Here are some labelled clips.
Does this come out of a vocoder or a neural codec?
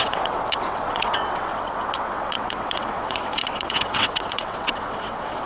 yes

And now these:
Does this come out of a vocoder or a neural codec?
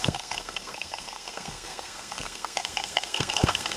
yes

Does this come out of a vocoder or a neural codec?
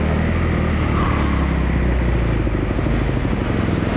no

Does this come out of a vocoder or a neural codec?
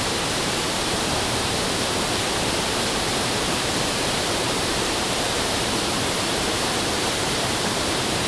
yes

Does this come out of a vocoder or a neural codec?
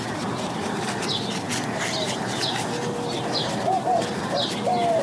no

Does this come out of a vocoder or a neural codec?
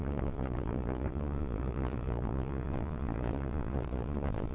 yes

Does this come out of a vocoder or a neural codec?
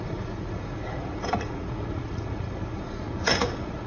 yes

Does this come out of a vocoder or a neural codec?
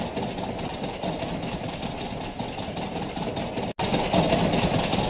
no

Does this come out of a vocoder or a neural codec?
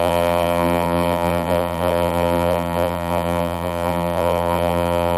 yes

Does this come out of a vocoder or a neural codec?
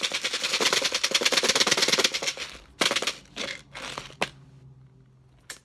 no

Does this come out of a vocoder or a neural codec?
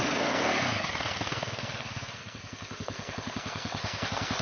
yes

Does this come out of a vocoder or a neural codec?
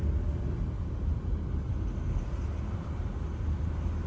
no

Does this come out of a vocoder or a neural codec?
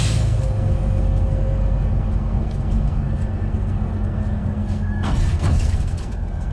yes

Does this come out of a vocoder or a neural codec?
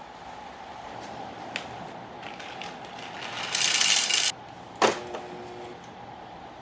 no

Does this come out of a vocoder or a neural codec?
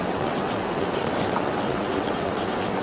yes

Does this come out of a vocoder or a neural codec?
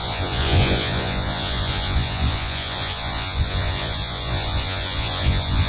yes